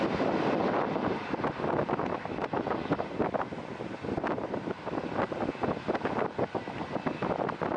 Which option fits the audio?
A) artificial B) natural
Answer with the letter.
B